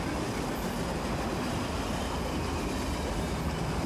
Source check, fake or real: real